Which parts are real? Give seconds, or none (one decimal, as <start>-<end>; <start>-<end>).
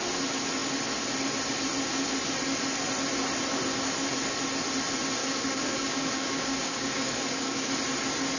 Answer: 0.0-5.2; 7.7-8.4